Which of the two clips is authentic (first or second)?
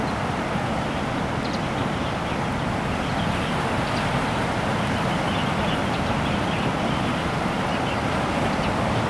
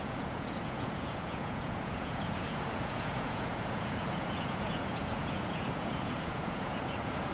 first